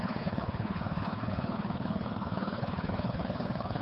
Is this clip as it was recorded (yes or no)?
no